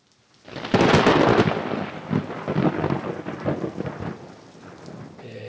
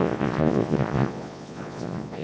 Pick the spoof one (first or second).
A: second